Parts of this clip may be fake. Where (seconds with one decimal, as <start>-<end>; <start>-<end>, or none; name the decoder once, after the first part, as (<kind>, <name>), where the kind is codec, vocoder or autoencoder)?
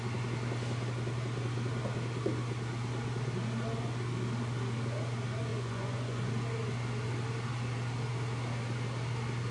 5.5-6.3 (vocoder, Vocos)